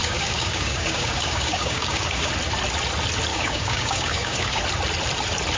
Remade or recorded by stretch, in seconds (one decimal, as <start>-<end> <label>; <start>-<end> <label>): 0.0-2.3 remade; 2.3-3.3 recorded; 3.3-4.6 remade; 4.6-5.6 recorded